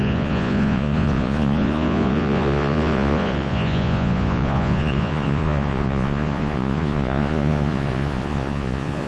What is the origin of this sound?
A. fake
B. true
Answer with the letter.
A